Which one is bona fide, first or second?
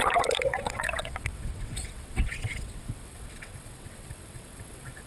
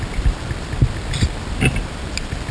second